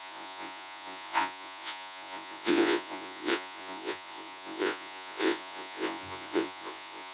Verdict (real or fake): fake